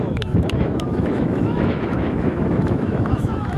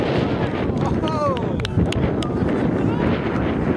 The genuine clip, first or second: second